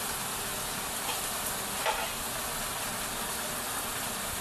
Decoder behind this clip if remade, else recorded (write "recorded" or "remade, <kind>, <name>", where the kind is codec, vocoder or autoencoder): recorded